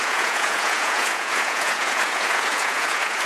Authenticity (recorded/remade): remade